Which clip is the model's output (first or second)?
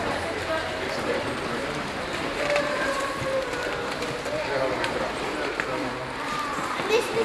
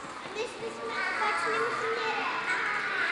first